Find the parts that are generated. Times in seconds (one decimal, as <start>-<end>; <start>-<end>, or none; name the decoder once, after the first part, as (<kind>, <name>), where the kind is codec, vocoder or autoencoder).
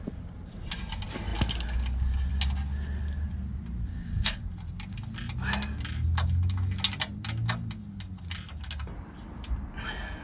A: 3.9-4.4 (codec, DAC)